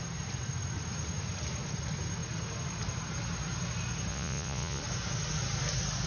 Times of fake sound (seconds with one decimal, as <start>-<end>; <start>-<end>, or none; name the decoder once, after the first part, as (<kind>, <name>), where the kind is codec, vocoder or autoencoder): 4.1-4.8 (vocoder, Vocos)